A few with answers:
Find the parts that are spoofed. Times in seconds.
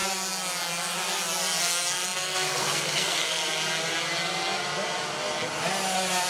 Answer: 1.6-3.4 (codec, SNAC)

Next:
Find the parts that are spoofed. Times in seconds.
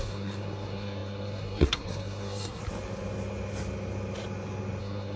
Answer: 0.0-2.6 (codec, SNAC); 4.8-5.2